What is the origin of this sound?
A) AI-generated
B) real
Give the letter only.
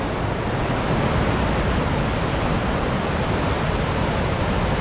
B